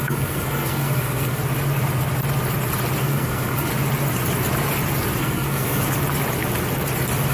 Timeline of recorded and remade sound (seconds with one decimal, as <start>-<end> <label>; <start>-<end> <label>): 0.0-1.4 remade; 1.4-3.0 recorded; 3.0-3.7 remade; 3.7-5.2 recorded; 5.2-5.8 remade; 5.8-7.3 recorded